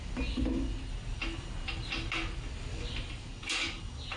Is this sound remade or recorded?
recorded